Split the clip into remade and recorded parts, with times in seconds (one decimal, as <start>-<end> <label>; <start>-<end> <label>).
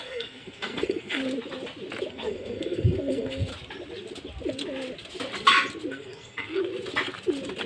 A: 0.0-1.2 remade; 1.2-2.1 recorded; 2.1-3.5 remade; 3.5-5.9 recorded; 5.9-6.6 remade; 6.6-7.7 recorded